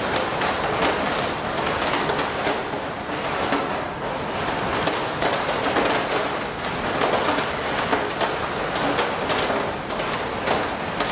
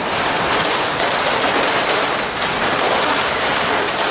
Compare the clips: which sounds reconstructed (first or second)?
second